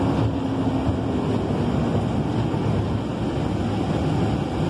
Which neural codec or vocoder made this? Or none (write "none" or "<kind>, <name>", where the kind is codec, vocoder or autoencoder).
none